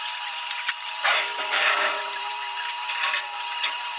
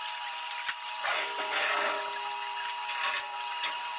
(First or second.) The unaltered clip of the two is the second